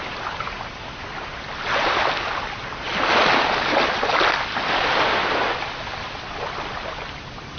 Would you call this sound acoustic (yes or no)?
yes